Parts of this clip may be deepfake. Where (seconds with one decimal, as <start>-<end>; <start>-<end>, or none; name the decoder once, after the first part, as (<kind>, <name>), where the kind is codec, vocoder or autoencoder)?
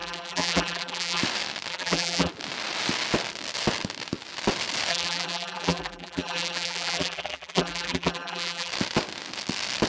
0.0-1.2 (vocoder, BigVGAN v2); 1.7-2.3; 4.9-8.7